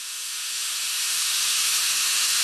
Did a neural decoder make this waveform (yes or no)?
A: yes